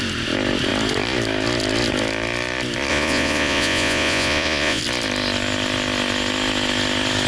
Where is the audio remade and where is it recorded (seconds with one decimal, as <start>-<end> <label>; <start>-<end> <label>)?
0.0-2.9 recorded; 2.9-4.8 remade; 4.8-7.3 recorded

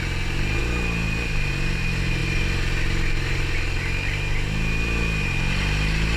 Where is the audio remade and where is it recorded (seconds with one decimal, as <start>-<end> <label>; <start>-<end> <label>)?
0.0-6.2 recorded

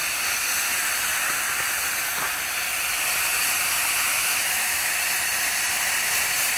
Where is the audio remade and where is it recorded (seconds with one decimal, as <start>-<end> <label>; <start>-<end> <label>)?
0.0-4.1 recorded; 4.1-4.9 remade; 4.9-6.6 recorded

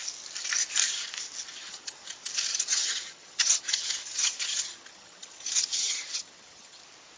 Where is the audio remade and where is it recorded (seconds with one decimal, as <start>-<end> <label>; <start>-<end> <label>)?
0.0-1.6 recorded; 1.6-2.1 remade; 2.1-2.5 recorded; 2.5-6.8 remade; 6.8-7.2 recorded

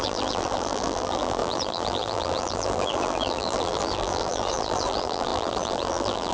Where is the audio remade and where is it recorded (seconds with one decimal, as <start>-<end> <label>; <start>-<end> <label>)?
0.0-6.3 remade